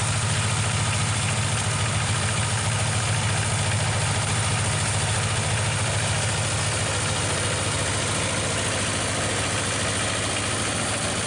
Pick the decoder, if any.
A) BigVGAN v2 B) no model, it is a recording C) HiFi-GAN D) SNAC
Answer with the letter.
B